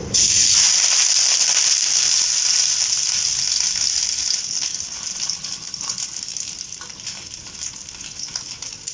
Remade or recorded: recorded